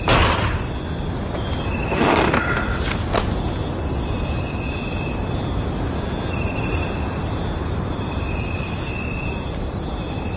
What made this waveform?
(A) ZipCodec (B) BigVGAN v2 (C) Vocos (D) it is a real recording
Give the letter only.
D